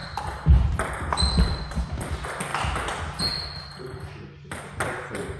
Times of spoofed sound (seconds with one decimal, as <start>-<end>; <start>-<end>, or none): none